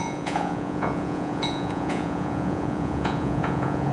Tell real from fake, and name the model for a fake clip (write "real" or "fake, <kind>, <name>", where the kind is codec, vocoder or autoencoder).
fake, vocoder, Vocos